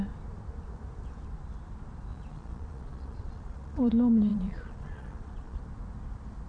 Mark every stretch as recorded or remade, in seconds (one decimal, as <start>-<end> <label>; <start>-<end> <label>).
0.0-2.1 recorded; 2.1-3.9 remade; 3.9-4.3 recorded; 4.3-5.6 remade; 5.6-6.5 recorded